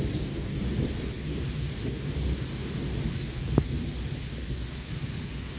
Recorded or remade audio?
recorded